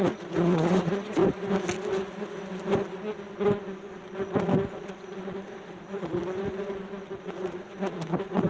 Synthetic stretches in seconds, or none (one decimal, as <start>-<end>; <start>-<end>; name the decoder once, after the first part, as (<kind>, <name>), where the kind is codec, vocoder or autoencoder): 0.0-1.2 (vocoder, Vocos); 4.7-6.2; 7.2-8.5